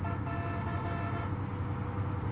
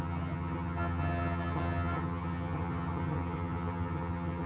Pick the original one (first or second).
first